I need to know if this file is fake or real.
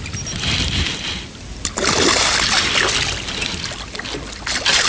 real